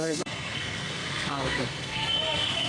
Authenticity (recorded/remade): remade